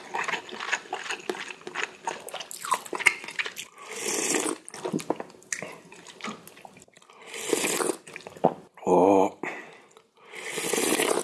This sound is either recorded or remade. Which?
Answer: recorded